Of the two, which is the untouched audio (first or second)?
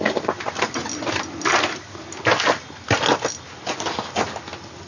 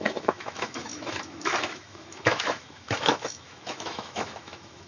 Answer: first